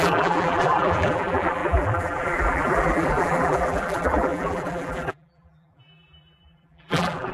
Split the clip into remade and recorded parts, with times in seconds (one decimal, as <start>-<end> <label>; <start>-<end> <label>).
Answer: 0.0-7.3 remade